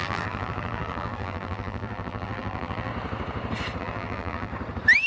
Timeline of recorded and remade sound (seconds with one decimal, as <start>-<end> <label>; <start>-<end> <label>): 0.0-2.9 remade; 2.9-3.8 recorded; 3.8-4.5 remade; 4.5-5.1 recorded